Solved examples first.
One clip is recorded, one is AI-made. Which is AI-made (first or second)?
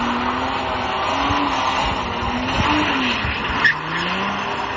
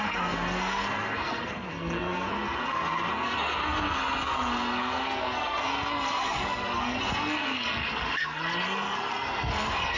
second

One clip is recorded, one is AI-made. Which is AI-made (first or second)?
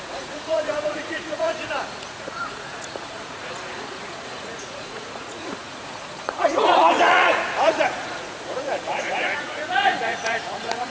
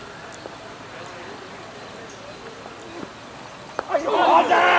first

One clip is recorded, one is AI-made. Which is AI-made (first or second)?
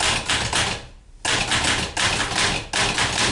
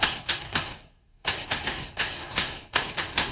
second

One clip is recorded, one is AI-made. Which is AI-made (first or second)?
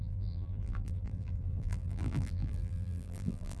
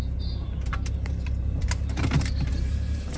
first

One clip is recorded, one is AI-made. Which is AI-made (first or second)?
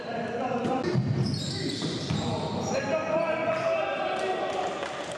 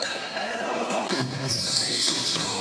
second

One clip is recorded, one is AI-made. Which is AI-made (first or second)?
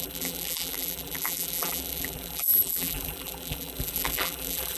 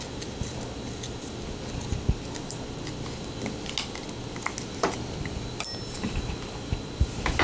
first